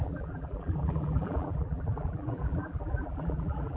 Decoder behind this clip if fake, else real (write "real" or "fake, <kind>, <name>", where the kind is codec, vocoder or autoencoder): fake, vocoder, BigVGAN v2